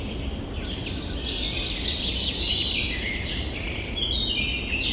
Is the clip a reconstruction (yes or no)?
no